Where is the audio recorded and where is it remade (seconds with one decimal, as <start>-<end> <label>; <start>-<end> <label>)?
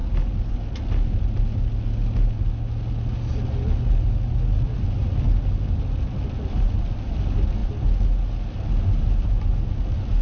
0.0-10.2 recorded